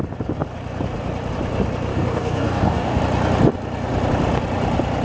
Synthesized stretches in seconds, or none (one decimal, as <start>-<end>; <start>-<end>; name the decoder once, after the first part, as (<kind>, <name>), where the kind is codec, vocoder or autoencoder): 1.9-3.0 (codec, DAC)